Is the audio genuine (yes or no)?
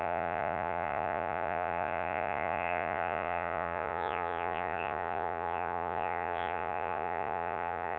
no